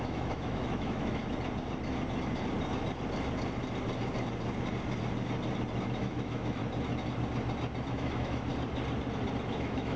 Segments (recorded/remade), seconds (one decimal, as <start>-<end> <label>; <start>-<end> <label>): 0.0-1.2 remade; 1.2-6.0 recorded; 6.0-6.6 remade; 6.6-7.9 recorded; 7.9-8.5 remade; 8.5-9.5 recorded; 9.5-10.0 remade